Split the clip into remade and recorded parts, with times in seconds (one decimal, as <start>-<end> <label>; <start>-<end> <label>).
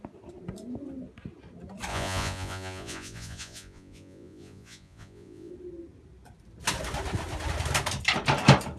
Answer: 0.0-1.9 recorded; 1.9-5.5 remade; 5.5-8.8 recorded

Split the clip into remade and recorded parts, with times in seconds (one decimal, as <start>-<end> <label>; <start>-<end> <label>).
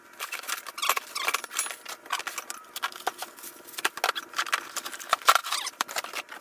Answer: 0.0-5.4 recorded; 5.4-6.4 remade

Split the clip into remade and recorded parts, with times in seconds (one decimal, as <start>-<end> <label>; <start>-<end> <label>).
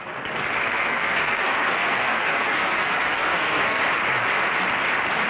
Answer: 0.0-0.6 recorded; 0.6-3.8 remade; 3.8-5.3 recorded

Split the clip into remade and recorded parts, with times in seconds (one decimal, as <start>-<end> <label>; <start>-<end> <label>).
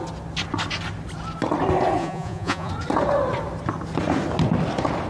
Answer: 0.0-2.0 recorded; 2.0-2.7 remade; 2.7-5.1 recorded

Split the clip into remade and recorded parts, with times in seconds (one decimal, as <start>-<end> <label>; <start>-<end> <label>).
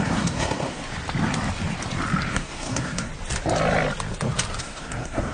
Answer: 0.0-0.8 remade; 0.8-2.3 recorded; 2.3-3.1 remade; 3.1-4.6 recorded; 4.6-5.3 remade